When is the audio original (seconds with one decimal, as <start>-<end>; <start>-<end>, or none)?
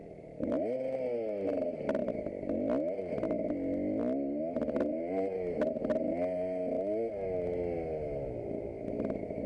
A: 0.0-9.5